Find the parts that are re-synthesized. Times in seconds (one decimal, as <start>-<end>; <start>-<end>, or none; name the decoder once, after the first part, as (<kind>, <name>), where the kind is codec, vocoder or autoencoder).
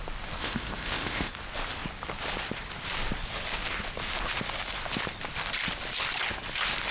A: 0.4-1.3 (codec, ZipCodec)